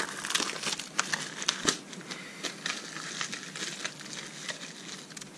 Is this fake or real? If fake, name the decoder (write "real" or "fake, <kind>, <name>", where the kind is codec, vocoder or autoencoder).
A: real